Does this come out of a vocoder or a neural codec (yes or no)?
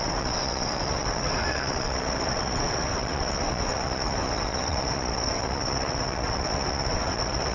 yes